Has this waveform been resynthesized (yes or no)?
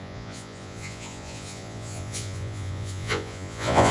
yes